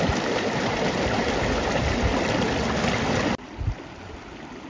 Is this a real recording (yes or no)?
yes